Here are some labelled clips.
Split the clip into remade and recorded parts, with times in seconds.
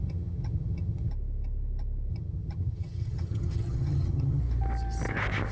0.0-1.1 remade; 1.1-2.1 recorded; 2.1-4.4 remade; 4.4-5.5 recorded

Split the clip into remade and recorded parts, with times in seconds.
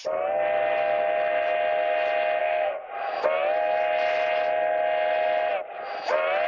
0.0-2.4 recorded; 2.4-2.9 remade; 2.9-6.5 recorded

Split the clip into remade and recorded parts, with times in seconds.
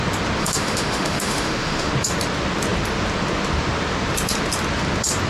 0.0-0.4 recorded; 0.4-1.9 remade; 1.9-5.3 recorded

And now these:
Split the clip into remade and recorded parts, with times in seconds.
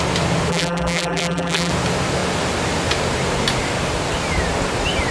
0.0-0.5 recorded; 0.5-1.7 remade; 1.7-5.1 recorded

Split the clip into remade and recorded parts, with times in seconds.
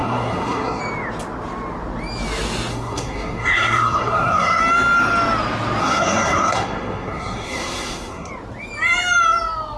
0.0-0.8 remade; 0.8-2.7 recorded; 2.7-4.6 remade; 4.6-5.8 recorded; 5.8-8.3 remade; 8.3-9.8 recorded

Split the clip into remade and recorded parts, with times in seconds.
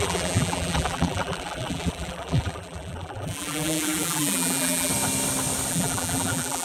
0.0-4.9 remade; 4.9-5.7 recorded; 5.7-6.6 remade